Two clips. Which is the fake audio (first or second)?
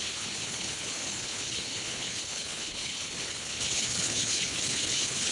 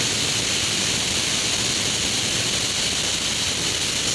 first